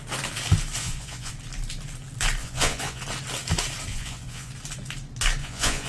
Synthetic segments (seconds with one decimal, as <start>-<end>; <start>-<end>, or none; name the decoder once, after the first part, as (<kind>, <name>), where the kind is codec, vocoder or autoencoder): 0.8-1.3 (vocoder, Vocos); 2.4-3.0; 3.9-4.5; 5.4-5.9